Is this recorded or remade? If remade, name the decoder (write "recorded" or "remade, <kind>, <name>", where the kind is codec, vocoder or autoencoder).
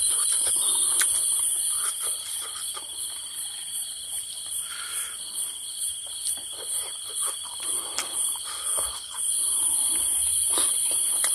remade, vocoder, BigVGAN v2